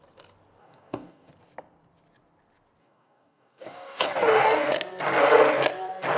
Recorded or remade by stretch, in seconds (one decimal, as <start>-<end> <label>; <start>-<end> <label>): 0.0-0.6 recorded; 0.6-1.3 remade; 1.3-2.8 recorded; 2.8-4.7 remade; 4.7-6.2 recorded